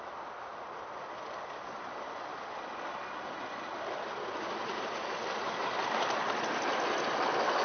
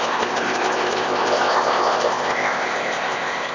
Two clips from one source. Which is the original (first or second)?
first